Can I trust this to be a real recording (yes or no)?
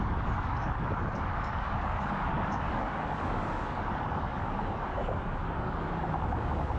no